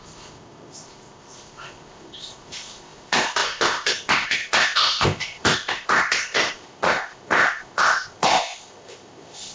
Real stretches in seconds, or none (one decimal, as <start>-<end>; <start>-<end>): none